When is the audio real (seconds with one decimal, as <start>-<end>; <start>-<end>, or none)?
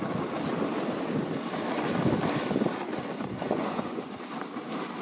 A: 0.0-3.4; 4.2-5.0